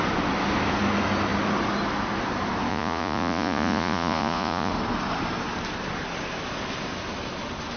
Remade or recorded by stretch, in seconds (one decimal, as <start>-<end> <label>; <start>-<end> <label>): 0.0-2.7 recorded; 2.7-4.7 remade; 4.7-7.8 recorded